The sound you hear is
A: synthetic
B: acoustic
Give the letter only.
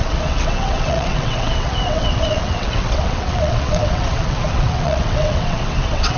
A